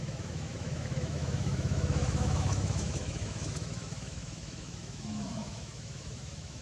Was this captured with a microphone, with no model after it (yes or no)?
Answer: no